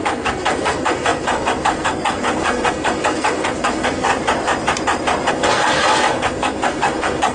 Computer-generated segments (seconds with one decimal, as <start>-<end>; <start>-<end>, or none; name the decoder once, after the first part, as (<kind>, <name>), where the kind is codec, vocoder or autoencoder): 0.0-4.1 (codec, SNAC); 5.3-7.3